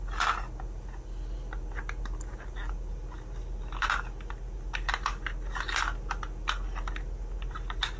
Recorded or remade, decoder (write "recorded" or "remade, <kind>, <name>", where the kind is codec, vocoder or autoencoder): recorded